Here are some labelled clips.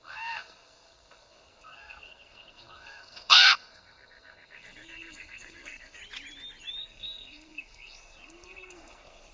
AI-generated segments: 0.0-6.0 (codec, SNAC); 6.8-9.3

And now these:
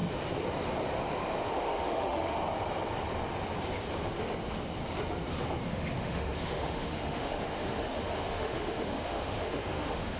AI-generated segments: 1.5-2.4 (autoencoder, DAC-VAE); 5.7-10.2

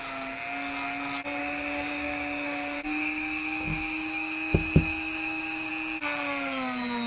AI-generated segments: 1.4-5.7 (codec, DAC)

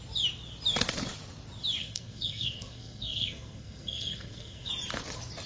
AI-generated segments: 1.8-4.7 (codec, SNAC)

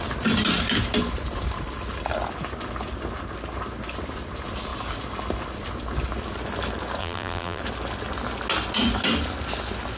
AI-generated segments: 7.0-7.6 (vocoder, BigVGAN v2)

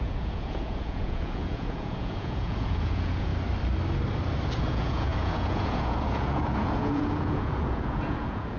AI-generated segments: 0.0-3.3 (vocoder, Vocos); 4.6-8.6

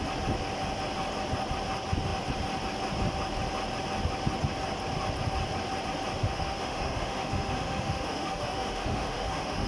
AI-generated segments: 6.2-9.7 (autoencoder, DAC-VAE)

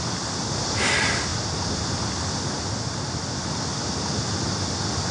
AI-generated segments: none